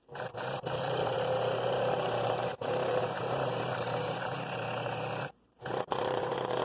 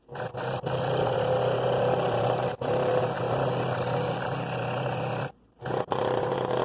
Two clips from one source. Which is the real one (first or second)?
second